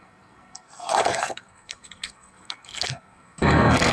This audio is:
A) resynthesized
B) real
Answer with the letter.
A